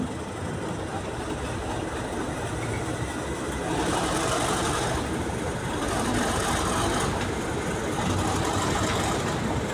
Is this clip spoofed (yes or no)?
no